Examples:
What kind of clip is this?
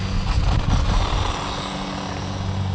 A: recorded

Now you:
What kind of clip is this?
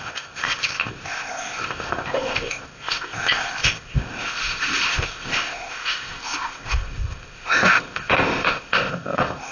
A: remade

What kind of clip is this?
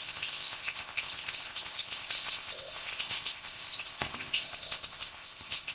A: remade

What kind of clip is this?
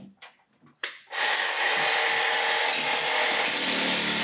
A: recorded